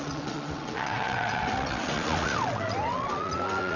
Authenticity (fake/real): fake